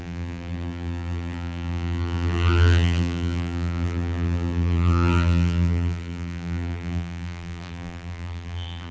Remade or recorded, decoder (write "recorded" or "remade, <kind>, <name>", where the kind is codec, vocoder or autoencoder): remade, vocoder, BigVGAN v2